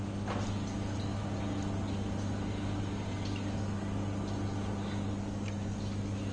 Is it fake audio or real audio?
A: real